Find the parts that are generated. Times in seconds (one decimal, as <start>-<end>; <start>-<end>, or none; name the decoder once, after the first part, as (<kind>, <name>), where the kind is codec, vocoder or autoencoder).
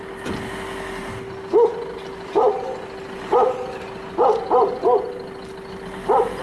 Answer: none